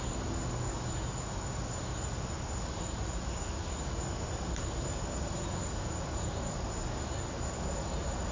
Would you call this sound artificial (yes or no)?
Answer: no